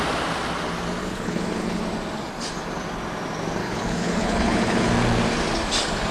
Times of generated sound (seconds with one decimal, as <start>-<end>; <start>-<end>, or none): 1.0-1.8; 3.6-4.9